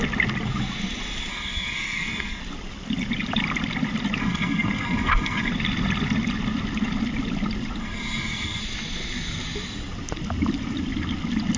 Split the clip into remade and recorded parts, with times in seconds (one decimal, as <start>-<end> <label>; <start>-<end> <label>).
0.0-1.3 recorded; 1.3-2.4 remade; 2.4-4.2 recorded; 4.2-5.5 remade; 5.5-7.8 recorded; 7.8-8.6 remade; 8.6-11.6 recorded